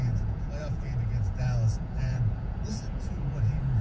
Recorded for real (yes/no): no